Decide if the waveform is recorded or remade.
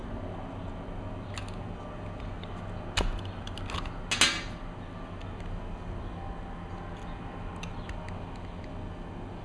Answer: recorded